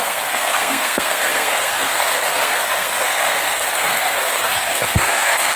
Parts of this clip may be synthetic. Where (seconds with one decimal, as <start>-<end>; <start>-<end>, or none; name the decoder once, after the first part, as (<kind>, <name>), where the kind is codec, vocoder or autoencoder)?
0.0-5.6 (codec, SNAC)